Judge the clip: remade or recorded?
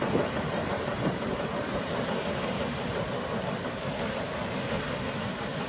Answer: remade